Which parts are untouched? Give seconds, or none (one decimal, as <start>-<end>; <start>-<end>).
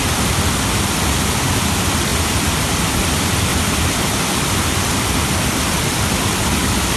0.0-3.5; 4.8-7.0